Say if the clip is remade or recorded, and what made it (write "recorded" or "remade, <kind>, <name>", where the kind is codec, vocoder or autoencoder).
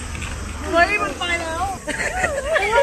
recorded